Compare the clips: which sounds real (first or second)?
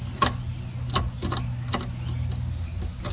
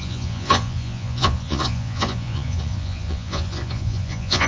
first